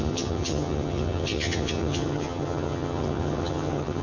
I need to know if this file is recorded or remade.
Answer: remade